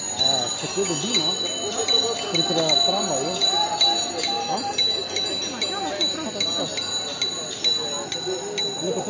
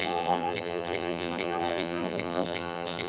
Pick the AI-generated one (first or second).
second